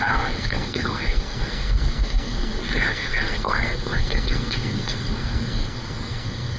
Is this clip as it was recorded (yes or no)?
no